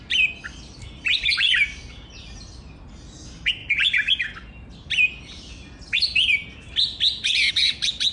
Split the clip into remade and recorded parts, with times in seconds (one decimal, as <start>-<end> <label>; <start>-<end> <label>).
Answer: 0.0-8.1 recorded